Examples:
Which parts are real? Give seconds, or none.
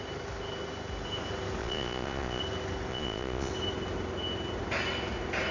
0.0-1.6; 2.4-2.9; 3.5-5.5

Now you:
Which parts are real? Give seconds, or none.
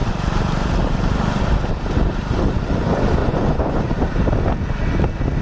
0.0-3.2; 3.9-5.4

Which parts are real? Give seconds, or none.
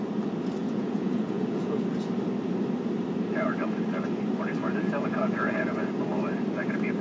0.0-0.6; 1.8-4.6; 5.9-7.0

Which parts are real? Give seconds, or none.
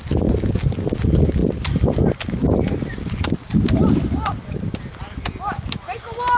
0.0-6.4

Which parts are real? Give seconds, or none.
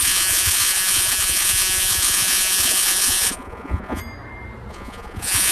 4.0-4.7